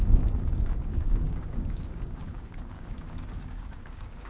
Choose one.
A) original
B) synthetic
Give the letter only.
B